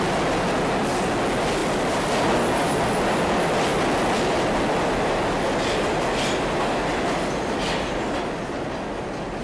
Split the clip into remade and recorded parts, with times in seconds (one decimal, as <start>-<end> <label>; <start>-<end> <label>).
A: 0.0-9.4 recorded